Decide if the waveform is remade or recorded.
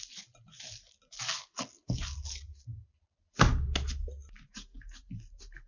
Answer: recorded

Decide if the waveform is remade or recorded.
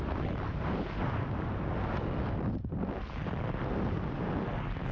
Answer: recorded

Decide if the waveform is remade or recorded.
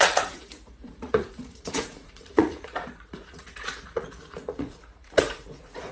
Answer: remade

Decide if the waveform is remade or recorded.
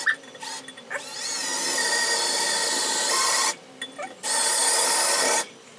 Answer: recorded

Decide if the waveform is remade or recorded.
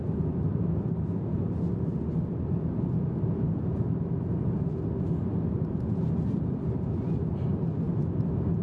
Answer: recorded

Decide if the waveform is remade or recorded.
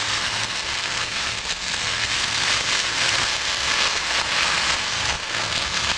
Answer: remade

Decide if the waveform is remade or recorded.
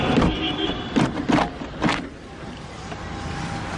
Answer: recorded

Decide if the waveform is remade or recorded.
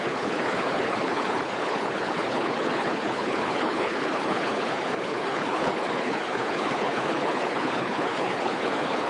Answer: remade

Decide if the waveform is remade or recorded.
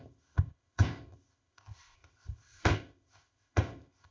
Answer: remade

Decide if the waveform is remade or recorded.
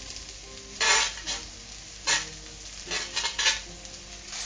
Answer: recorded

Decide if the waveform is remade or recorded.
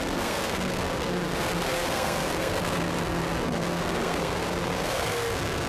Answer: remade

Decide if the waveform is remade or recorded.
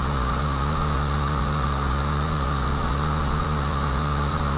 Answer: remade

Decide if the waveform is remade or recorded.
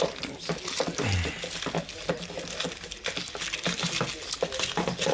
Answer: recorded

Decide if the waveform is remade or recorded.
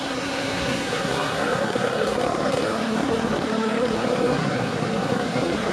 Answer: remade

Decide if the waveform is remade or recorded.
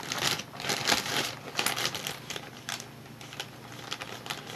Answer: recorded